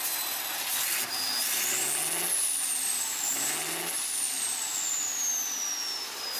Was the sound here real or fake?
real